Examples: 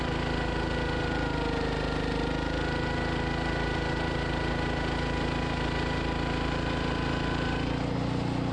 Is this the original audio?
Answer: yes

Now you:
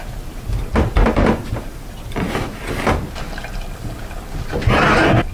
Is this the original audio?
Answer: yes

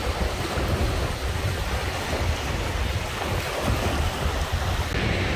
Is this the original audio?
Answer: yes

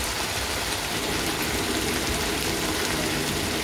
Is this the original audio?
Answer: yes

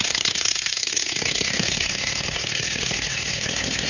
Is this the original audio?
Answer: no